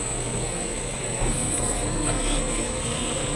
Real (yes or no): no